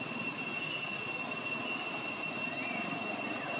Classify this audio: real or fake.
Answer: real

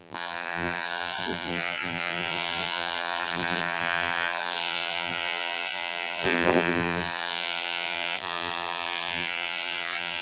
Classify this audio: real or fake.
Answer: fake